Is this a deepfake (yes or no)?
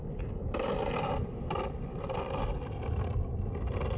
no